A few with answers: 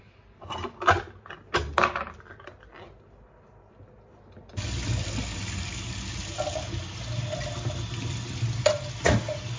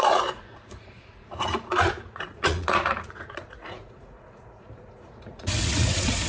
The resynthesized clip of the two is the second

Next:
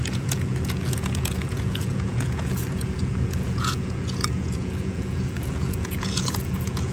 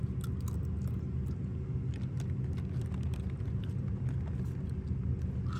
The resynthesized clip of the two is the first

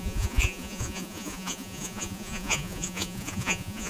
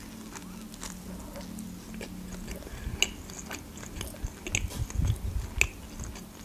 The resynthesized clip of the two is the first